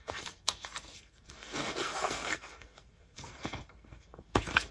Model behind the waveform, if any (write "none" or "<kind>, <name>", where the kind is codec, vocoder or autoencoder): codec, SNAC